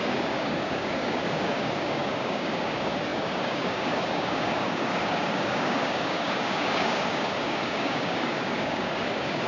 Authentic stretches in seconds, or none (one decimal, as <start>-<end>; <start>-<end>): none